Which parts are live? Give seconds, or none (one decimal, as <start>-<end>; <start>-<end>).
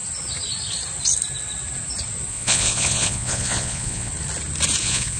0.0-2.3; 4.1-4.8